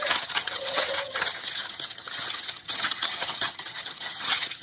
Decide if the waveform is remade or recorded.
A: remade